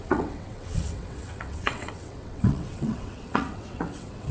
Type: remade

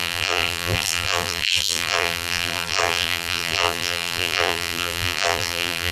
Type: remade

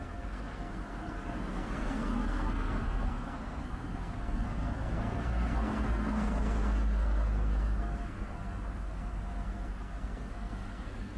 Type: remade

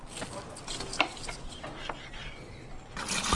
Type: recorded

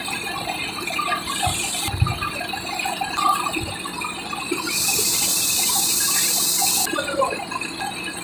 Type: recorded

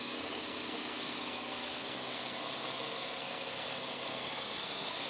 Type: remade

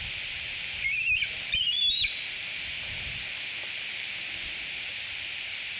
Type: recorded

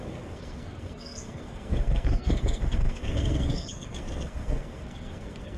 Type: remade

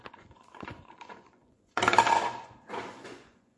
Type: remade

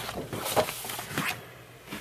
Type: recorded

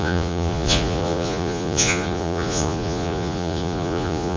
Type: remade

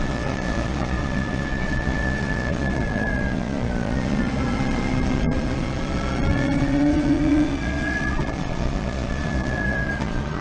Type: remade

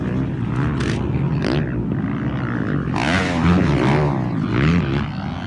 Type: recorded